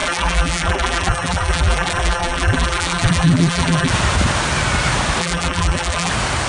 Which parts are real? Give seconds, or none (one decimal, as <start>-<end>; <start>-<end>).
3.9-5.2; 6.1-6.5